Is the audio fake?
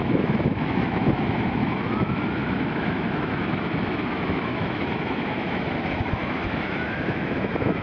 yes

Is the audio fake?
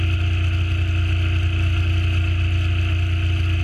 no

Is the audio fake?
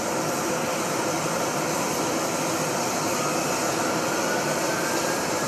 no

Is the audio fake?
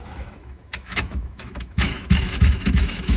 yes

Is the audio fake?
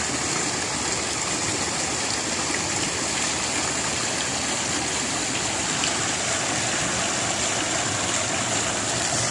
no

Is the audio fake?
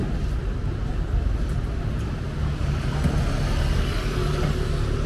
no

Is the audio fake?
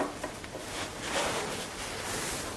no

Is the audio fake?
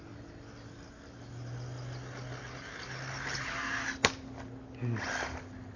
no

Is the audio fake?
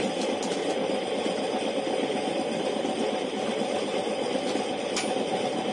no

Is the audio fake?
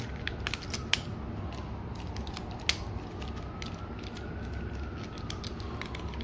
no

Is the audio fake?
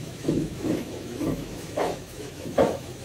yes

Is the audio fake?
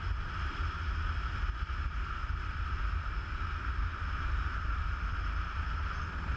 no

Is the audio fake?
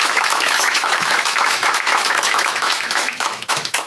yes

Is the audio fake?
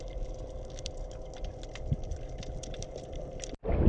no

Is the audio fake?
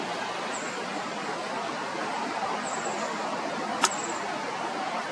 no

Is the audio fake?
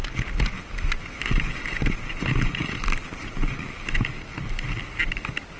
no